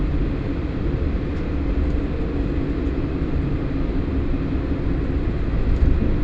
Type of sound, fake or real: real